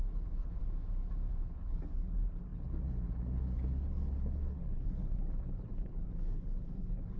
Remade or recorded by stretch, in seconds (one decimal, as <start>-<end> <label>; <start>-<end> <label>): 0.0-0.6 remade; 0.6-1.5 recorded; 1.5-7.2 remade